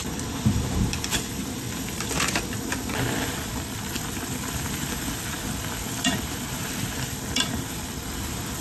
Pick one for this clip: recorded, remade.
remade